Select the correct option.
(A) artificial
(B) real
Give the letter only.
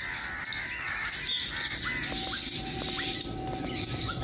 B